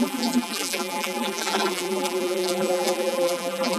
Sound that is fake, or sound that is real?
fake